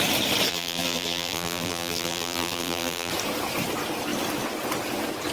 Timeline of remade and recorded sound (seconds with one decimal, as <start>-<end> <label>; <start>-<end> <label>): 0.0-0.5 recorded; 0.5-3.1 remade; 3.1-5.3 recorded